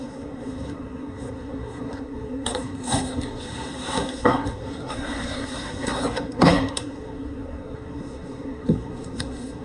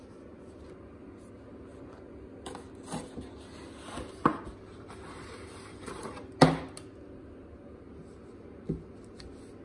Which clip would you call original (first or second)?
second